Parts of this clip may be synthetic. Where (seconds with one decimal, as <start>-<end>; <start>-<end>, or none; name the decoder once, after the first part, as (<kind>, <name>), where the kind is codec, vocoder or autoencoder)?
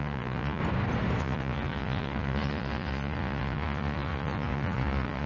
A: 0.0-0.6 (vocoder, Vocos); 1.2-5.3